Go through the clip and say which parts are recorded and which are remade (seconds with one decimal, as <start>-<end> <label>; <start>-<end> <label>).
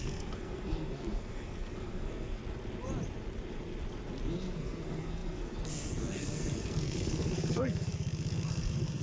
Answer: 0.0-2.4 remade; 2.4-4.3 recorded; 4.3-9.0 remade